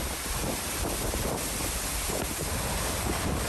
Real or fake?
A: real